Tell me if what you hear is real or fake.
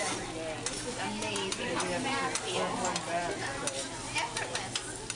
real